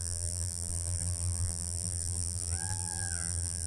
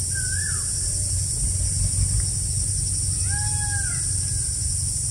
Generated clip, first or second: first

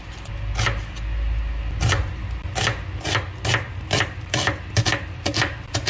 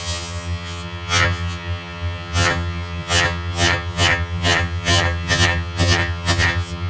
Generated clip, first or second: second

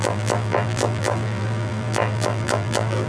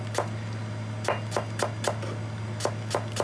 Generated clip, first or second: first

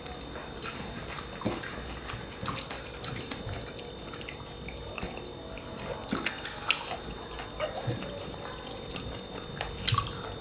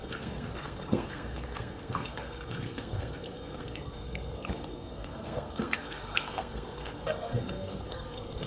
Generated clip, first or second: second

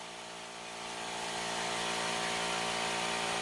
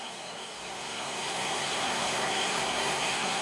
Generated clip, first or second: second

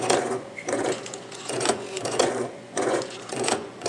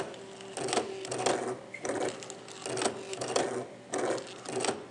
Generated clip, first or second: first